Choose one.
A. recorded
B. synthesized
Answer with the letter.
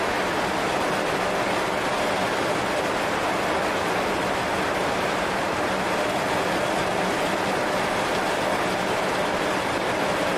A